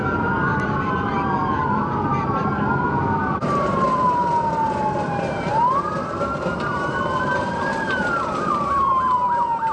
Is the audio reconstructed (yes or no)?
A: yes